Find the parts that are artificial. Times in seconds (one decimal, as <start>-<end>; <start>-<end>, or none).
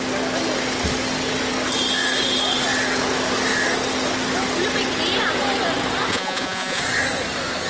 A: 6.1-6.8